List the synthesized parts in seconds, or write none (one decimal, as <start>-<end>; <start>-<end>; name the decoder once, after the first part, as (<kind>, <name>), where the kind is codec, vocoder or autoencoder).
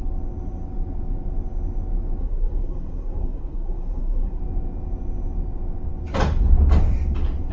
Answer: 2.2-4.4 (codec, SNAC)